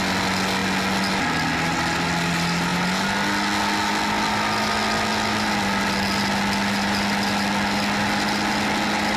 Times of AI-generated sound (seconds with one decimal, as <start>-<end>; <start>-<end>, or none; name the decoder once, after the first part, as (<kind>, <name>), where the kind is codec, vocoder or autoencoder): none